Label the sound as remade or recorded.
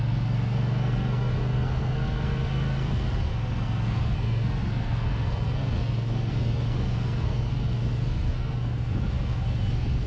remade